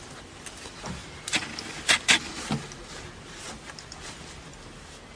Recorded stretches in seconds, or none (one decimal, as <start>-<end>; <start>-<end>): 0.0-5.2

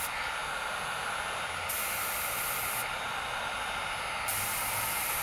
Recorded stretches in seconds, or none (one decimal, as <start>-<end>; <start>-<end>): 3.8-4.6